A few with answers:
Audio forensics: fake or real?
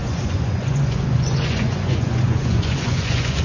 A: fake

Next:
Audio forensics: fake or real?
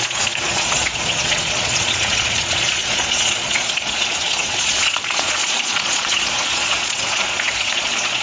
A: fake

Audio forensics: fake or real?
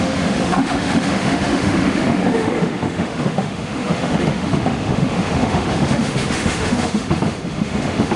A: fake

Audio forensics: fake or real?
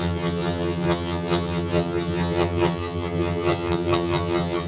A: fake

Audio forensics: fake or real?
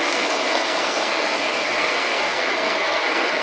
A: fake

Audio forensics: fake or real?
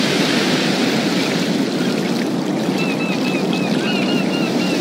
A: real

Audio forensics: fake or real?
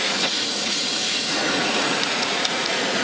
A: fake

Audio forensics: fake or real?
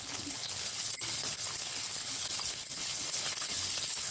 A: fake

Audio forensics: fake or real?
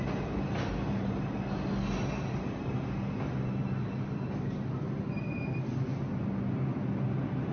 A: real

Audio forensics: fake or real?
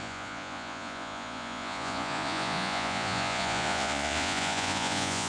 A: fake